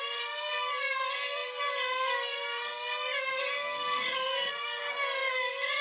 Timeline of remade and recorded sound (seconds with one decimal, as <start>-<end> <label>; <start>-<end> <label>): 0.0-5.8 remade

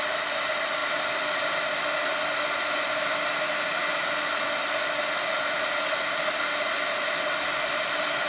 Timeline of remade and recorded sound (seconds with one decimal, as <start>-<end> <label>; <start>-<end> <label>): 0.0-8.3 recorded